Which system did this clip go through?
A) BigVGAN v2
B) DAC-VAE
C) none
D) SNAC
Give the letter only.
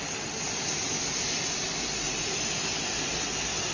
C